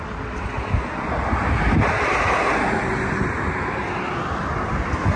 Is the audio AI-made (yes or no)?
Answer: no